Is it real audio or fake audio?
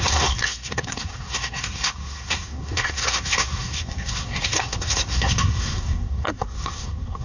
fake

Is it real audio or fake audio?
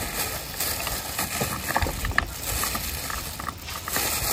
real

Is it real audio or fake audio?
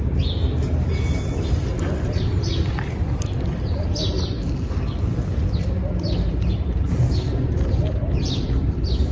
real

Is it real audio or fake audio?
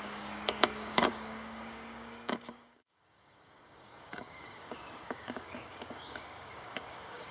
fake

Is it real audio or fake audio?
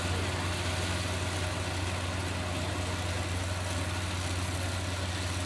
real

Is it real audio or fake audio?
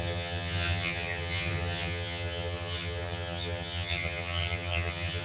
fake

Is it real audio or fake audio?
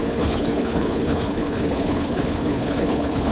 fake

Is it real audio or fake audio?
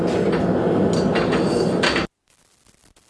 real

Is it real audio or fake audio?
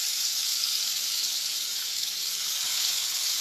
fake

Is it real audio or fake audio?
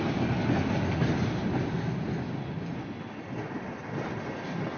real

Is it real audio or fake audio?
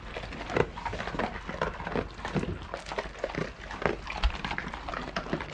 real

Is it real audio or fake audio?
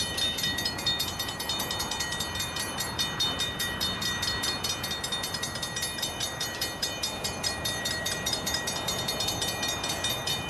fake